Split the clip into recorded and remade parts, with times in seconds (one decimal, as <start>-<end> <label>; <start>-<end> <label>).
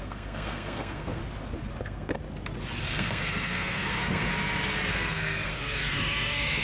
0.0-1.2 remade; 1.2-1.8 recorded; 1.8-2.2 remade; 2.2-2.8 recorded; 2.8-4.3 remade; 4.3-4.9 recorded; 4.9-6.6 remade